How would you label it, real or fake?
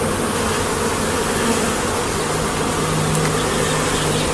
real